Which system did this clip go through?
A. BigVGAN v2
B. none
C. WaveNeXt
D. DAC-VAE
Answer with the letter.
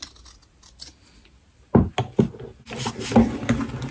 B